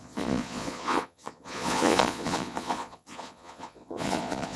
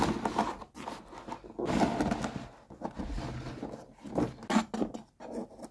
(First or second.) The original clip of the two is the second